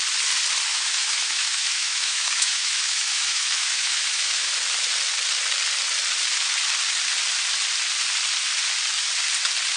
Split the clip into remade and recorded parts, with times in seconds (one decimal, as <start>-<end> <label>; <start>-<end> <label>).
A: 0.0-0.7 recorded; 0.7-4.5 remade; 4.5-9.8 recorded